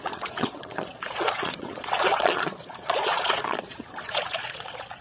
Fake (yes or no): yes